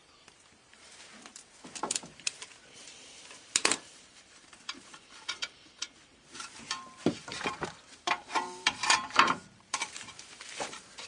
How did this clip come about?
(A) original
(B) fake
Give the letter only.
B